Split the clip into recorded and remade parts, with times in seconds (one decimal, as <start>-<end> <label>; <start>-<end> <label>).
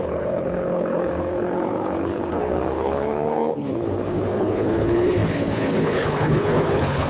0.0-7.1 remade